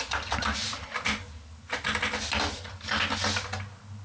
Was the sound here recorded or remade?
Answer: recorded